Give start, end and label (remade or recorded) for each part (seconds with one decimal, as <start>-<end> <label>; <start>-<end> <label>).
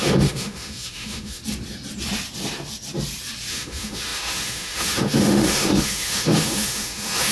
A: 0.0-1.4 remade; 1.4-3.5 recorded; 3.5-7.3 remade